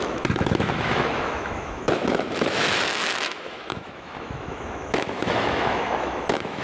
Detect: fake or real fake